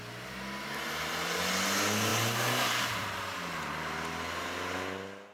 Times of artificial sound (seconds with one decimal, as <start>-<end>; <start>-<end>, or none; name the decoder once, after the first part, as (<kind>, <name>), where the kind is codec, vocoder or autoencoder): none